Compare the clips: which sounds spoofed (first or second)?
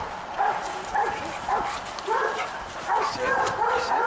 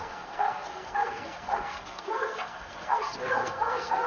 second